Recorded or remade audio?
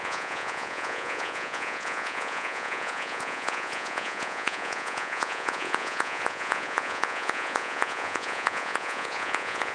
remade